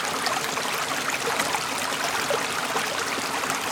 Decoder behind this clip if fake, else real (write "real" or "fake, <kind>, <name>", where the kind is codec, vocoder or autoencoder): real